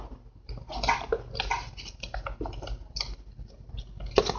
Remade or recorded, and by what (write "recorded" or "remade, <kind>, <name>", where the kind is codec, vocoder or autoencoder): recorded